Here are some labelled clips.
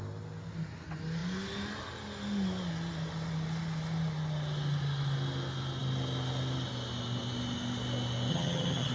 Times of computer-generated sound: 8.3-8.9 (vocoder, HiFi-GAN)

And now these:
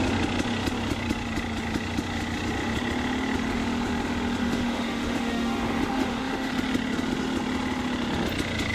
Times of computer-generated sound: 4.4-6.5 (autoencoder, DAC-VAE)

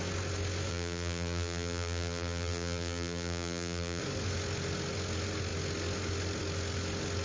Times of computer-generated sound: 0.7-4.0 (vocoder, BigVGAN v2)

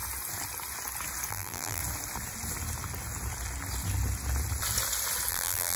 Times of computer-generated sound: 1.3-1.8 (vocoder, BigVGAN v2); 5.3-5.8

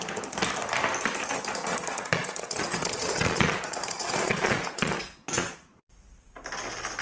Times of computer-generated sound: 1.7-5.9 (vocoder, Vocos)

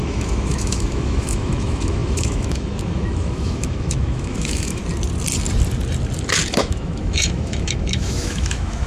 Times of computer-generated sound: 0.0-4.8 (autoencoder, DAC-VAE); 6.5-8.9